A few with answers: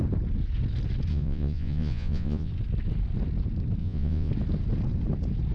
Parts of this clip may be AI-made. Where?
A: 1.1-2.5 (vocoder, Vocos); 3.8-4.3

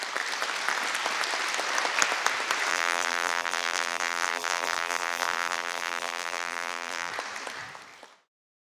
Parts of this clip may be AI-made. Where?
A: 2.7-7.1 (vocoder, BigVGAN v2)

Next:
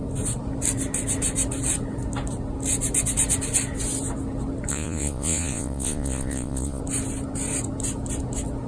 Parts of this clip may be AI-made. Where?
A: 4.7-6.8 (vocoder, Vocos)